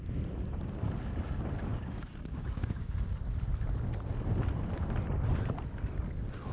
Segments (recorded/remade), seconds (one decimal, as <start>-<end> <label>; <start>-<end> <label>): 0.0-1.7 recorded; 1.7-3.1 remade; 3.1-6.5 recorded